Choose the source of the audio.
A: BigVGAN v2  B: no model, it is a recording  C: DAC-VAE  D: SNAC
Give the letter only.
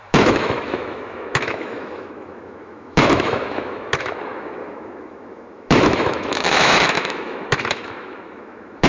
C